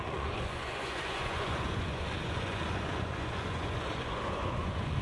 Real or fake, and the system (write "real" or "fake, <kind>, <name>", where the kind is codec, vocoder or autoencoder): fake, vocoder, Vocos